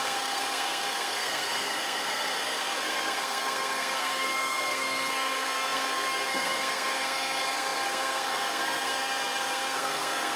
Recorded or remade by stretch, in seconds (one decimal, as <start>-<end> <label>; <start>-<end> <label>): 0.0-10.4 remade